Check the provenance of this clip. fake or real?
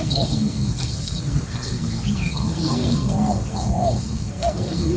fake